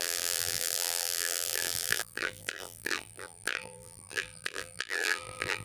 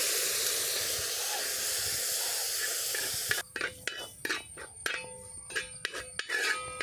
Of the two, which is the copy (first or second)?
first